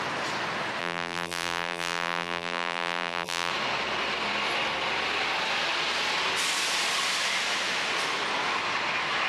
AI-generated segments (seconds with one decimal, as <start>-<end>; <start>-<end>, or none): 0.8-3.5

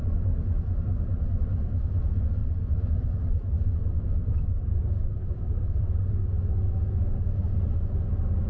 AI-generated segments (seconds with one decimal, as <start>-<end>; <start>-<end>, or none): 2.4-6.4